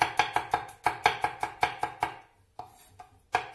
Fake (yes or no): no